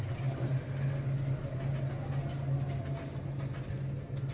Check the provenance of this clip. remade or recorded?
recorded